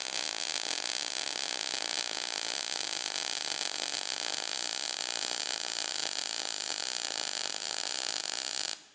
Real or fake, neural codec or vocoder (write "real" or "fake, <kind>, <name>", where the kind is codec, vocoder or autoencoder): real